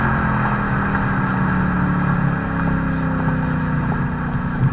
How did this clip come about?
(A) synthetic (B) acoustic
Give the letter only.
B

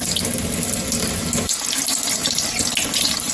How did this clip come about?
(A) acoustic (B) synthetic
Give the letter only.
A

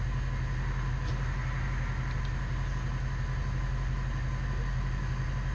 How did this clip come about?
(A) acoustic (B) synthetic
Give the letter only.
A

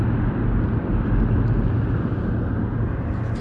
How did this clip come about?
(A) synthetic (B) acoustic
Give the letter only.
B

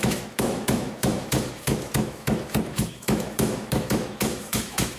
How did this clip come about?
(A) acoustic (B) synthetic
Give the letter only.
B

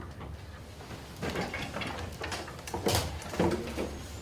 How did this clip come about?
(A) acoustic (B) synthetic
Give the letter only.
A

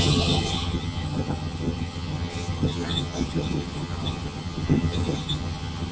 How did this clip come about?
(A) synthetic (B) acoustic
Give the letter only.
A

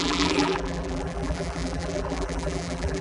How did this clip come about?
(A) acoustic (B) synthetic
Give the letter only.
B